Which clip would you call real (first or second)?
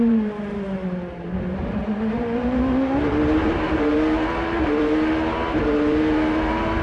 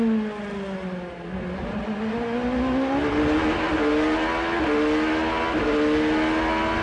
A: second